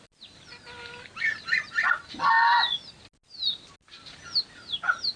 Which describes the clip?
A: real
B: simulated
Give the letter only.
A